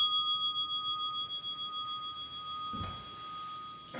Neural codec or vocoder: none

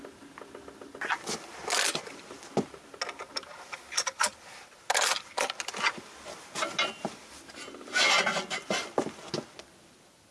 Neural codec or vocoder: none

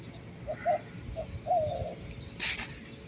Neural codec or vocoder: none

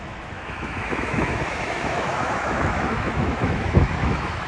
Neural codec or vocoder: autoencoder, DAC-VAE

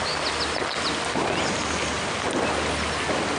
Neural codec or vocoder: none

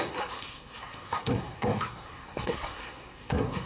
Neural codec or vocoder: codec, SNAC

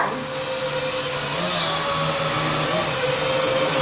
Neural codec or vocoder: none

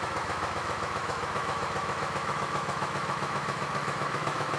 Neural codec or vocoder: autoencoder, DAC-VAE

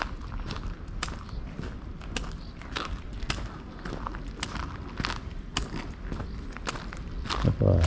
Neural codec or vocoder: none